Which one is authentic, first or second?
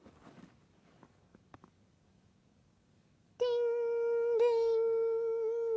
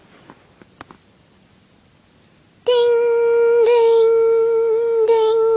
second